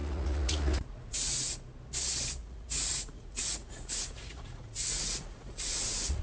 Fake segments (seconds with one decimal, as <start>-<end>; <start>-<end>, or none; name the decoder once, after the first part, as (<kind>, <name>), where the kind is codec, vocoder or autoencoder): 0.0-1.5 (vocoder, Vocos); 2.4-6.2